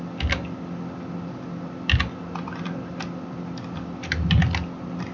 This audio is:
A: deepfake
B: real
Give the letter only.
B